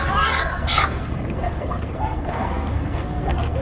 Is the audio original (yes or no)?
no